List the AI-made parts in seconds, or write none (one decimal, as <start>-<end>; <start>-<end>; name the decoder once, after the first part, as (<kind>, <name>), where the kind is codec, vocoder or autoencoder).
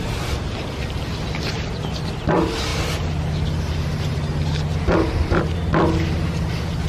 none